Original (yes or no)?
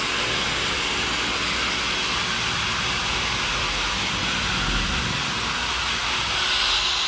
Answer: yes